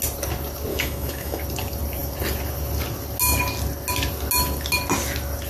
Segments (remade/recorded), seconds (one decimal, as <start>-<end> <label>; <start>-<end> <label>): 0.0-0.7 recorded; 0.7-1.4 remade; 1.4-5.5 recorded